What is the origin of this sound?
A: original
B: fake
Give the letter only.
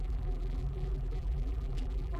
B